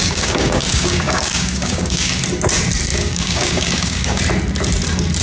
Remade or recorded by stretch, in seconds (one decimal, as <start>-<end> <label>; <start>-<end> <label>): 0.0-2.2 remade; 2.2-2.9 recorded; 2.9-4.2 remade; 4.2-5.2 recorded